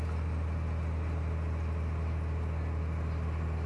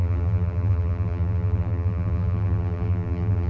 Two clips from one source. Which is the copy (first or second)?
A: second